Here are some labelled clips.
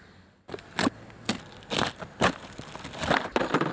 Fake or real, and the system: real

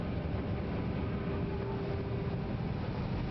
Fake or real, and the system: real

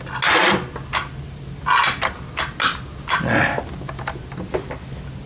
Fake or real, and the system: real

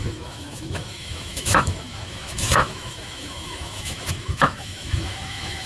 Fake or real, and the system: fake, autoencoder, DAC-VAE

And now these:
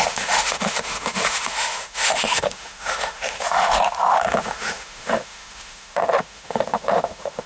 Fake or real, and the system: fake, autoencoder, DAC-VAE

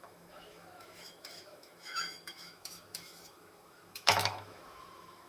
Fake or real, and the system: fake, autoencoder, DAC-VAE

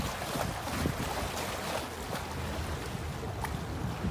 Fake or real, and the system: real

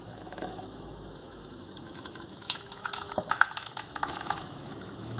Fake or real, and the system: fake, autoencoder, DAC-VAE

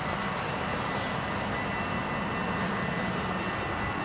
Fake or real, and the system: real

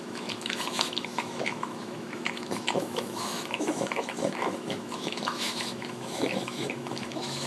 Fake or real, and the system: fake, autoencoder, DAC-VAE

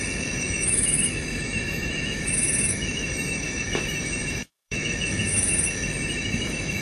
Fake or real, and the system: fake, autoencoder, DAC-VAE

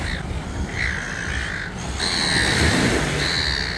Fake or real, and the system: real